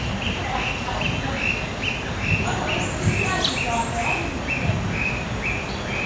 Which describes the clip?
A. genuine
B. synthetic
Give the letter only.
A